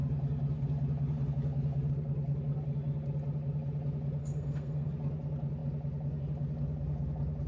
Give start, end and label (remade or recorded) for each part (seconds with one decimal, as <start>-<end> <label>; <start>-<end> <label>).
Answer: 0.0-4.2 recorded; 4.2-4.9 remade; 4.9-7.5 recorded